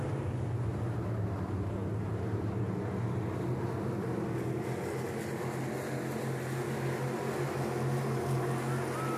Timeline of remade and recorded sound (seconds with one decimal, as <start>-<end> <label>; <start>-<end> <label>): 0.0-9.2 recorded